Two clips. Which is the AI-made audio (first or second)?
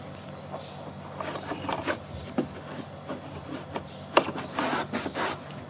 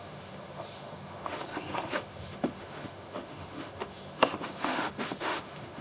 second